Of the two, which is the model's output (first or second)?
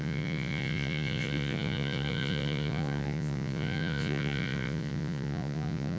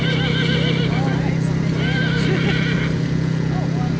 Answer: first